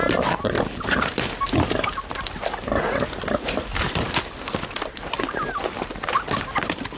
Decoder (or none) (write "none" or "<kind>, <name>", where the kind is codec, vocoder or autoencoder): none